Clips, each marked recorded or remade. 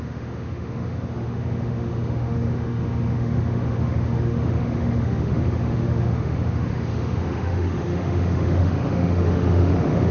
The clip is remade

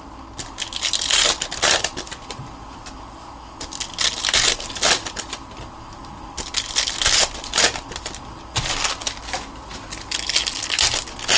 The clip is recorded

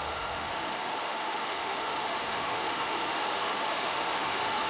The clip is remade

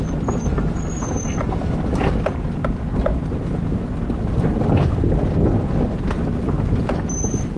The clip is recorded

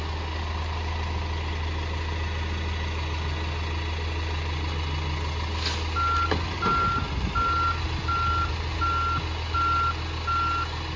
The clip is recorded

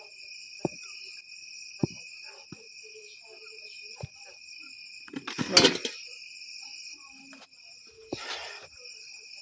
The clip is recorded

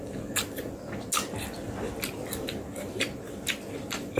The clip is recorded